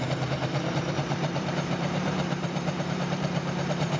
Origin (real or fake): fake